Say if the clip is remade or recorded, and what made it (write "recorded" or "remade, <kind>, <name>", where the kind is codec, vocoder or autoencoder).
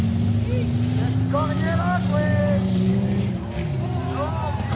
recorded